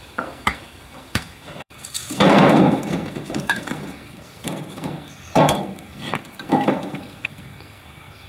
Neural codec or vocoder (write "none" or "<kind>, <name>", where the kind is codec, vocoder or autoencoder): codec, SNAC